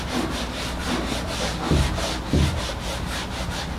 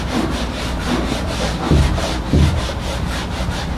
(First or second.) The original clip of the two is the first